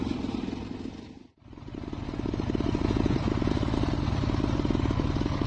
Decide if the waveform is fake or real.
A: real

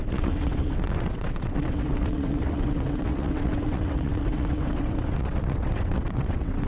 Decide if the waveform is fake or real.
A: fake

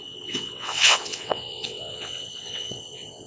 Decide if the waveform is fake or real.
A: fake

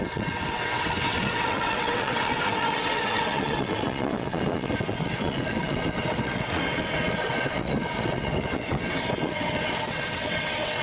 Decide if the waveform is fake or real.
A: fake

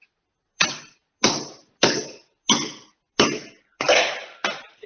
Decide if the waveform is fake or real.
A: real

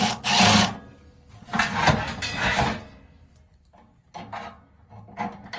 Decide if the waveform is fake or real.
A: real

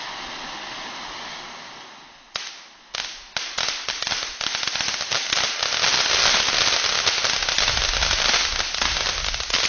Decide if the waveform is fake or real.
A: real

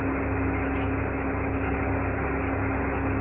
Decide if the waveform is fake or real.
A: real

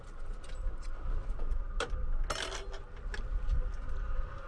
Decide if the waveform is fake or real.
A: real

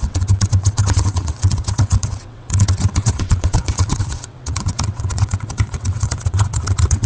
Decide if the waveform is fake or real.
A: fake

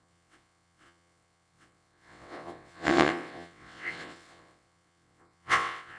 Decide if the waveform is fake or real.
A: fake